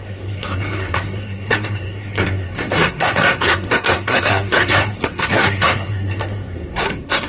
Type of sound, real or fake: fake